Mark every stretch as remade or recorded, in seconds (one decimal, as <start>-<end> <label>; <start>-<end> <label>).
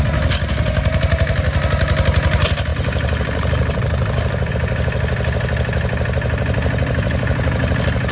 0.0-8.1 recorded